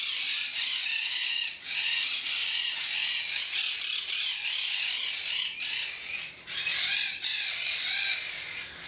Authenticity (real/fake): real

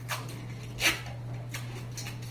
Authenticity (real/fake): real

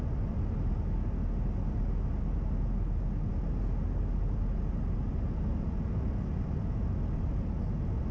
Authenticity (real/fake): real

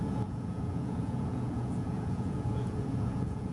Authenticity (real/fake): fake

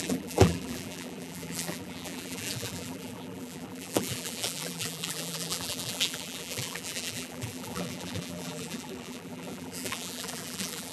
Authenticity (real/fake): fake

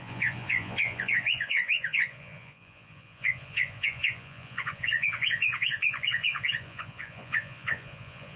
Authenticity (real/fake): fake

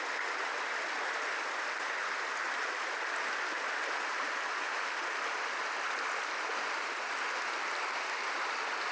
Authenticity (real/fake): real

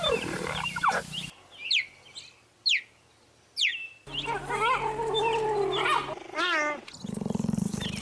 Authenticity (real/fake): real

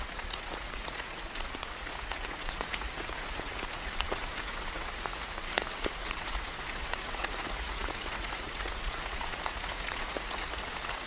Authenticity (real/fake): fake